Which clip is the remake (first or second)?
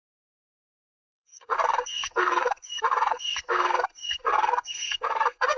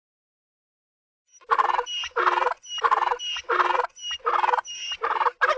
first